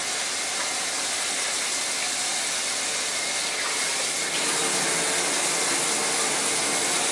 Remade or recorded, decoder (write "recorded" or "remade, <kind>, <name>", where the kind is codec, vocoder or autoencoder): recorded